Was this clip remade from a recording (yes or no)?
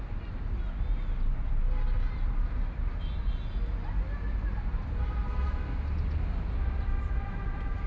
no